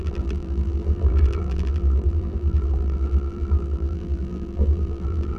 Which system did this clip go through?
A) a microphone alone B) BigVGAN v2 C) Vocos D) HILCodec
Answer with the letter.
B